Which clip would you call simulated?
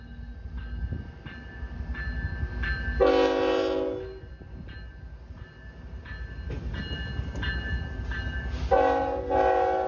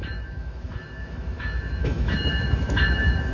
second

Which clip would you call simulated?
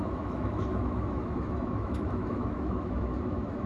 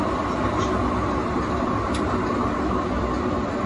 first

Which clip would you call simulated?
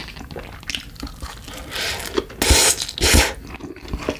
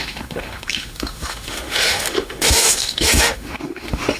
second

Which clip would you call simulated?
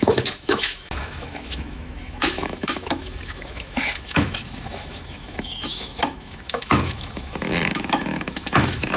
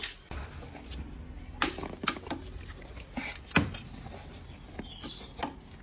first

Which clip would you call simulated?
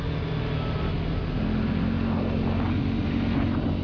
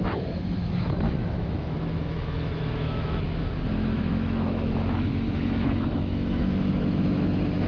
second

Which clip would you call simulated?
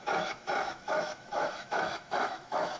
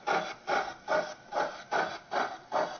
first